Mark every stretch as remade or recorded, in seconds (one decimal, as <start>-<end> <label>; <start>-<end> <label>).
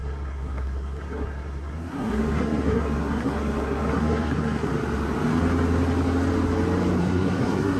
0.0-4.7 remade; 4.7-7.0 recorded; 7.0-7.8 remade